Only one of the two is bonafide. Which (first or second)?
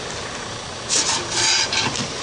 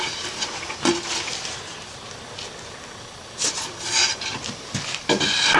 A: first